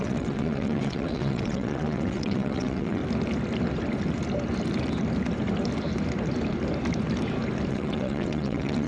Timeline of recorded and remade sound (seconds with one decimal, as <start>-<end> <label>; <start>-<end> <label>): 0.0-3.0 remade; 3.0-7.7 recorded; 7.7-8.9 remade